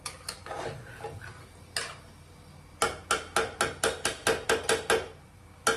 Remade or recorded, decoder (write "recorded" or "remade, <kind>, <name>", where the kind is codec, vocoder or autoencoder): recorded